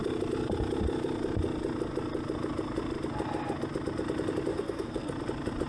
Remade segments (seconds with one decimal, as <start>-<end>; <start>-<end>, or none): 4.5-5.1